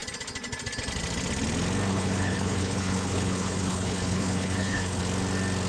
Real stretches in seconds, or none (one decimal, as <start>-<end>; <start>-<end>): 0.0-1.9; 5.0-5.7